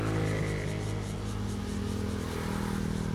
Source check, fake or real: real